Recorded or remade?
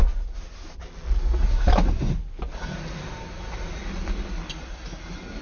recorded